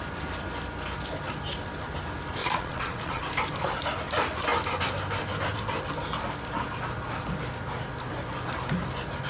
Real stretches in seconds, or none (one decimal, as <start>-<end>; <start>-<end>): 0.0-2.4; 3.2-9.3